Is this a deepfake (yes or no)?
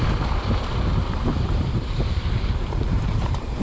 yes